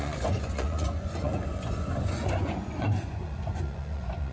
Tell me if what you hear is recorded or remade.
remade